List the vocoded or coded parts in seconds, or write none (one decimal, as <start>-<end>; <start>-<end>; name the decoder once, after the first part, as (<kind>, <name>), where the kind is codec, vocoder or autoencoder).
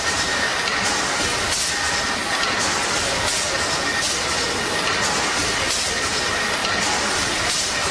none